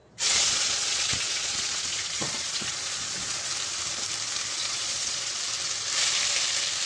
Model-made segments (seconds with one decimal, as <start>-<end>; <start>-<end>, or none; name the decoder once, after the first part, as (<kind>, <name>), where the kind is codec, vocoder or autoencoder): 0.0-3.5 (vocoder, Vocos); 4.6-5.4

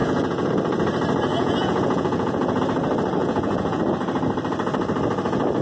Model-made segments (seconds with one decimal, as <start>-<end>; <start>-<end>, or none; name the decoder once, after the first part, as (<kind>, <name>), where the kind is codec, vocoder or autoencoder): 0.0-0.5 (vocoder, Vocos); 1.3-2.6; 3.2-3.8